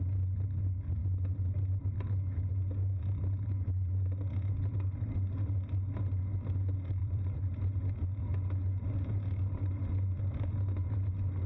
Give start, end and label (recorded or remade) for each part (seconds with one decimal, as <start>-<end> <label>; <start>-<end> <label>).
0.0-7.0 recorded; 7.0-7.8 remade; 7.8-11.5 recorded